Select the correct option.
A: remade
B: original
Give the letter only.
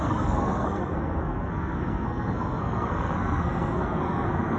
A